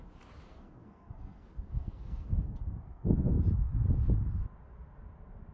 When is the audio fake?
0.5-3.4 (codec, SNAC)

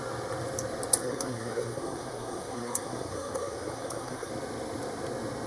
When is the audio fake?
1.0-4.3 (codec, SNAC)

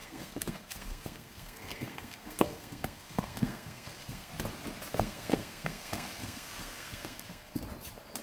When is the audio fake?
0.0-4.3 (codec, SNAC); 4.9-7.6

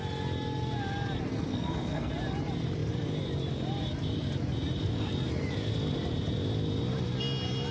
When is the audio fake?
1.3-2.1 (codec, SNAC)

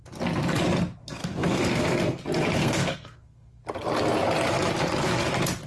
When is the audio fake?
1.2-2.2 (codec, SNAC); 2.6-3.6

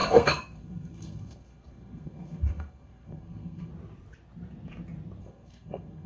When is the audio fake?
0.0-3.7 (codec, SNAC); 5.2-6.1